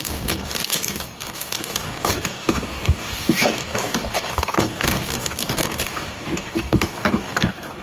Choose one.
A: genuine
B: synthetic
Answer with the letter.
B